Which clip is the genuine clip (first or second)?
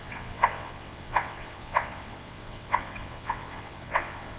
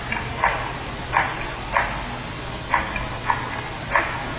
second